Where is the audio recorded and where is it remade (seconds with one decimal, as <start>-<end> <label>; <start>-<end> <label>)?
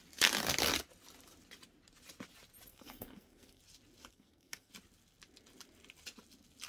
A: 0.0-2.7 recorded; 2.7-3.6 remade; 3.6-4.1 recorded; 4.1-4.7 remade; 4.7-6.7 recorded